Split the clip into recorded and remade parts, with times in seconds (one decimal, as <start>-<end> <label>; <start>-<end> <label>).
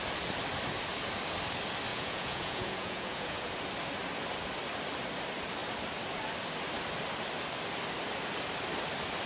0.0-1.9 recorded; 1.9-3.5 remade; 3.5-9.3 recorded